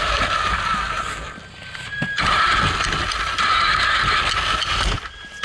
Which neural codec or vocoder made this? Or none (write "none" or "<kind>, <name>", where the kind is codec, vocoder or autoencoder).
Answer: none